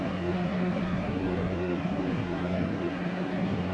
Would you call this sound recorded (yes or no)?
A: no